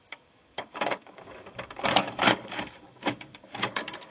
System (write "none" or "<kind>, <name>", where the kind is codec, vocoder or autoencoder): codec, DAC